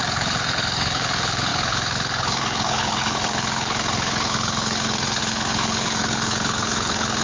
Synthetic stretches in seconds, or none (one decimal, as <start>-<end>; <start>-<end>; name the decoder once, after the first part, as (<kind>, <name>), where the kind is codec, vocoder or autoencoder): 0.0-7.2 (codec, HILCodec)

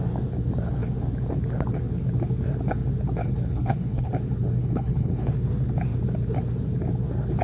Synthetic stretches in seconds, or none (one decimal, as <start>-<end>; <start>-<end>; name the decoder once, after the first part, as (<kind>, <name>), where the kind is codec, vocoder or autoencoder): 3.2-4.1 (codec, HILCodec); 4.6-5.3